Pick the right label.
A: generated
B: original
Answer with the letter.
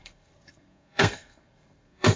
A